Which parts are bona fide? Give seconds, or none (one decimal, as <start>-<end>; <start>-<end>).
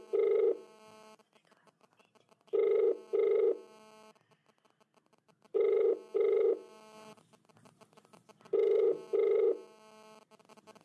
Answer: 0.0-10.8